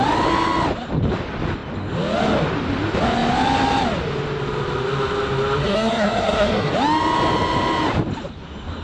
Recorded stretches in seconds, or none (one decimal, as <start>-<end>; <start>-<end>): 0.0-5.6; 6.7-8.8